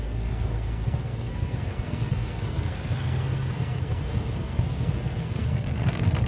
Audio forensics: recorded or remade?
remade